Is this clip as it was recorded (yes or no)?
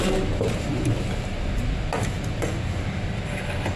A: yes